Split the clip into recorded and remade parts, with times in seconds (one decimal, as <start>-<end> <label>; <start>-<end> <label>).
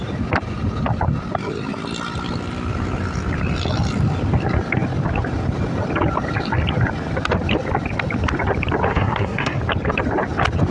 0.0-8.9 recorded; 8.9-9.6 remade; 9.6-10.7 recorded